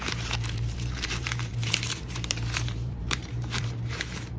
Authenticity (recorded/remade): remade